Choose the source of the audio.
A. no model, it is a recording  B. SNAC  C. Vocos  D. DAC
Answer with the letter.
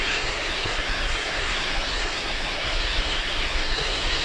B